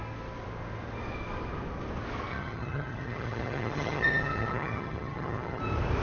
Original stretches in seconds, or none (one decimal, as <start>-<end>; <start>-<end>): 0.0-2.3; 5.6-6.0